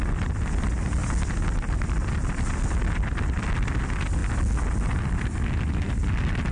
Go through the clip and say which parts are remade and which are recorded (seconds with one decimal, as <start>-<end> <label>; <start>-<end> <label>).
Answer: 0.0-6.5 recorded